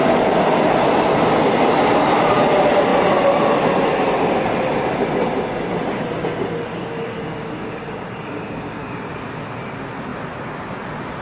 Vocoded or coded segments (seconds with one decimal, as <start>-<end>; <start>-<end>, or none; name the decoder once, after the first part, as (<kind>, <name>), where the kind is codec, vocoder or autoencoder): 6.7-9.0 (codec, DAC)